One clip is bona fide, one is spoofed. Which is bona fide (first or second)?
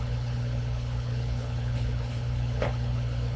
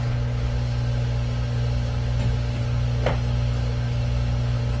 second